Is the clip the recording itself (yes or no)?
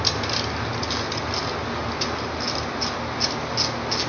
yes